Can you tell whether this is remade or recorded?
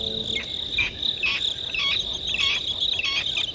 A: recorded